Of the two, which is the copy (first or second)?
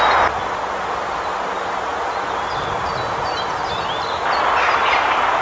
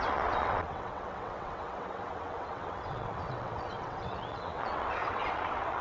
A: second